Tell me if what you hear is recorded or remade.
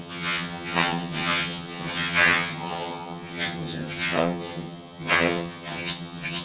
remade